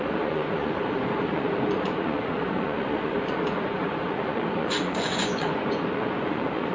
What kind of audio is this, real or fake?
fake